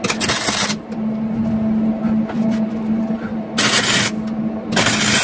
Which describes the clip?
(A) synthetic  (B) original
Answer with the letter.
B